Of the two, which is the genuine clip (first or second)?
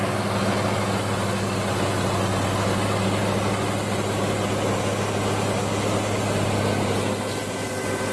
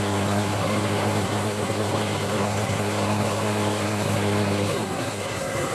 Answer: first